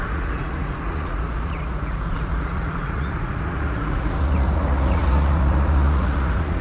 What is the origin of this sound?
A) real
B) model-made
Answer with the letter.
B